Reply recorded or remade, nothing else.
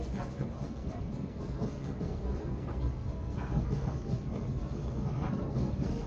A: remade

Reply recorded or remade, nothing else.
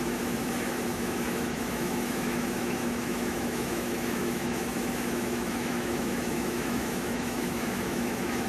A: remade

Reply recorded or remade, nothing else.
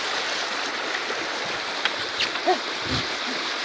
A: recorded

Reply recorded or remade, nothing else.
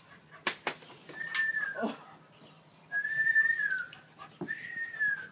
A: recorded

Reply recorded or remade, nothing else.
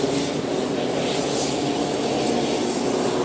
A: recorded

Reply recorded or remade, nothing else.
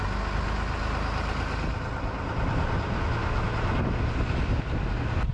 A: recorded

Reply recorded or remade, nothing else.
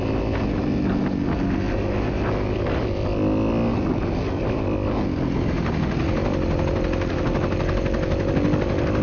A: recorded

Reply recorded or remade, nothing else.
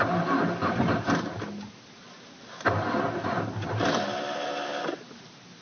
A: recorded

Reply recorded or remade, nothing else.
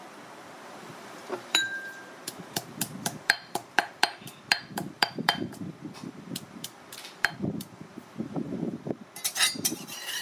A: remade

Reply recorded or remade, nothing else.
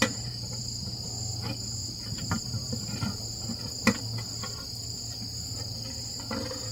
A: recorded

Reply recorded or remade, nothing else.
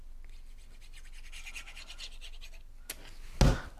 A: recorded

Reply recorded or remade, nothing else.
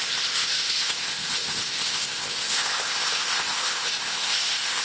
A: remade